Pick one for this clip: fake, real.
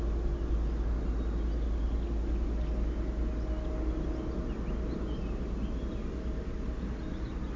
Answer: real